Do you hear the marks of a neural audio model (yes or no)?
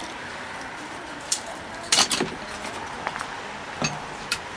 yes